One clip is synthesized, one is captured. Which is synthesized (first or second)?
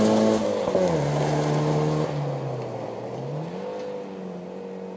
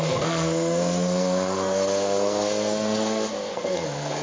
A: second